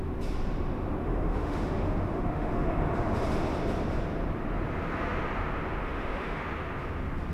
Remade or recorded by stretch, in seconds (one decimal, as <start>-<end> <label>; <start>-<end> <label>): 0.0-1.0 recorded; 1.0-2.9 remade; 2.9-5.8 recorded; 5.8-6.4 remade; 6.4-7.3 recorded

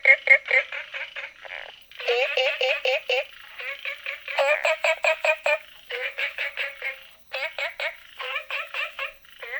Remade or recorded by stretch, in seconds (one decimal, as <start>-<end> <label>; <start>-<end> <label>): 0.0-4.4 recorded; 4.4-6.5 remade; 6.5-8.0 recorded; 8.0-9.0 remade; 9.0-9.6 recorded

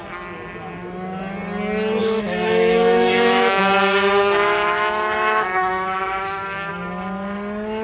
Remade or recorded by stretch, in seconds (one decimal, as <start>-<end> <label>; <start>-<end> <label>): 0.0-2.0 recorded; 2.0-6.7 remade; 6.7-7.8 recorded